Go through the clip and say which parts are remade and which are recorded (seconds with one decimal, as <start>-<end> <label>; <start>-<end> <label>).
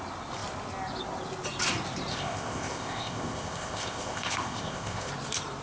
0.0-2.1 recorded; 2.1-5.1 remade; 5.1-5.6 recorded